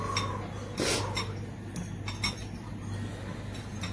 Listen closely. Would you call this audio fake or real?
real